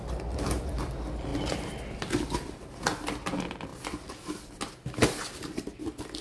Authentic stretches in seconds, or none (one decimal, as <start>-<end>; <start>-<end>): 0.0-6.2